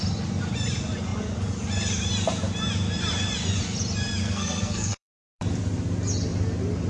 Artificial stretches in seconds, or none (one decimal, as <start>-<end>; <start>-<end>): 4.2-5.4